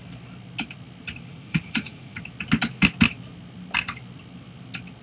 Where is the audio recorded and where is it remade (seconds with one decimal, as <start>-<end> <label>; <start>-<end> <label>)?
0.0-1.3 recorded; 1.3-2.2 remade; 2.2-5.0 recorded